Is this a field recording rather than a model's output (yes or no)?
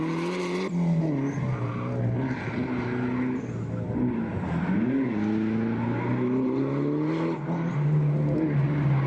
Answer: yes